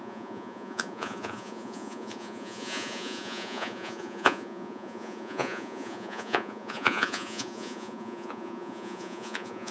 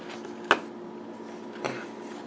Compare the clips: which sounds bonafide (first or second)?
second